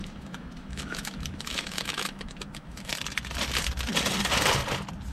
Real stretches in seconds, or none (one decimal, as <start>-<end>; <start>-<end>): 2.9-5.1